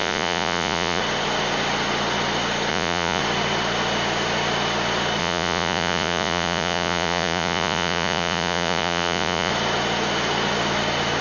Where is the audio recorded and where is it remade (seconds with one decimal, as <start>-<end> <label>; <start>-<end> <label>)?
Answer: 0.0-1.0 remade; 1.0-2.7 recorded; 2.7-3.2 remade; 3.2-5.2 recorded; 5.2-9.5 remade; 9.5-11.2 recorded

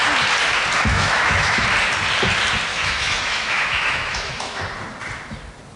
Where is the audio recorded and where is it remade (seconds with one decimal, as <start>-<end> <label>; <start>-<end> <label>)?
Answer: 0.0-0.9 recorded; 0.9-1.6 remade; 1.6-2.7 recorded; 2.7-4.6 remade; 4.6-5.8 recorded

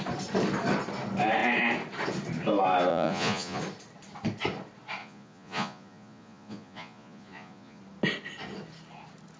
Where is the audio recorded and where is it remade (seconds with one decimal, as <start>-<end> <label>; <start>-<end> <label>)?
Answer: 0.0-2.9 recorded; 2.9-3.6 remade; 3.6-5.0 recorded; 5.0-7.8 remade; 7.8-9.4 recorded

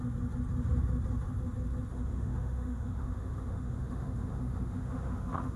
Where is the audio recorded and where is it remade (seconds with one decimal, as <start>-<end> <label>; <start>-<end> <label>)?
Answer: 0.0-1.9 recorded; 1.9-5.6 remade

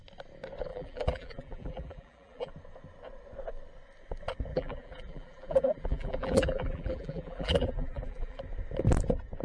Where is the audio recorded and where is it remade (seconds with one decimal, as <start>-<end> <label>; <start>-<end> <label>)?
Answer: 0.0-0.7 recorded; 0.7-2.5 remade; 2.5-4.5 recorded; 4.5-8.4 remade; 8.4-9.4 recorded

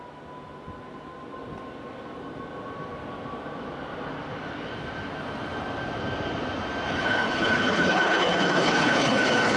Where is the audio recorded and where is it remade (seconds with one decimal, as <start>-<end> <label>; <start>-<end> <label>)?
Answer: 0.0-6.9 recorded; 6.9-9.6 remade

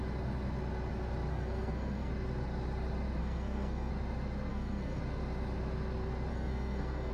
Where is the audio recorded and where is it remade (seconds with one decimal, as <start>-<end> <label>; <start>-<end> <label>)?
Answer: 0.0-1.3 recorded; 1.3-2.1 remade; 2.1-3.2 recorded; 3.2-3.9 remade; 3.9-4.5 recorded; 4.5-5.0 remade; 5.0-6.3 recorded; 6.3-7.1 remade

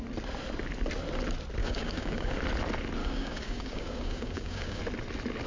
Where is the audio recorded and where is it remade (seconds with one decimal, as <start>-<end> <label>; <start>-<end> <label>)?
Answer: 0.0-1.6 recorded; 1.6-2.4 remade; 2.4-3.0 recorded; 3.0-4.8 remade; 4.8-5.5 recorded